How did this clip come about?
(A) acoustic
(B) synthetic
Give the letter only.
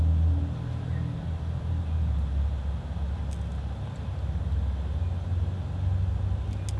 A